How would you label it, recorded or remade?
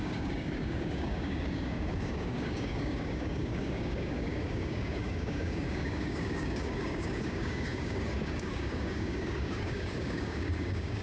remade